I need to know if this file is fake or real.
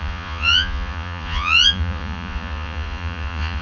fake